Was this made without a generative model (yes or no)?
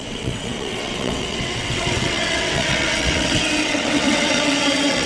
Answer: no